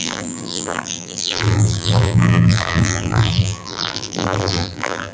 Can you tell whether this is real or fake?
fake